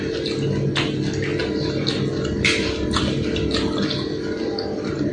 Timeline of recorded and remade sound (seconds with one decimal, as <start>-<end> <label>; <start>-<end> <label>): 0.0-5.1 recorded